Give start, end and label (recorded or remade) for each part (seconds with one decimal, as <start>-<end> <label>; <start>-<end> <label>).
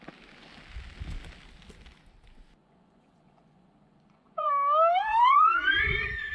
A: 0.0-2.6 recorded; 2.6-4.5 remade; 4.5-5.0 recorded; 5.0-6.3 remade